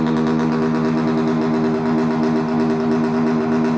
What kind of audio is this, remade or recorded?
recorded